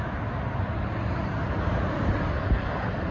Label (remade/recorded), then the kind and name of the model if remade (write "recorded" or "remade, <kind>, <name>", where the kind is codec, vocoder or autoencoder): recorded